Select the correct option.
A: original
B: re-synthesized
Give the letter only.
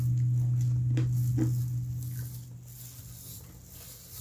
A